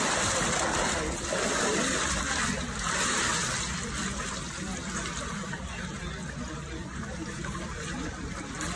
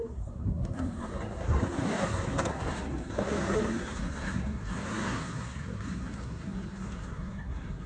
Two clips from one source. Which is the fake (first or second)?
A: second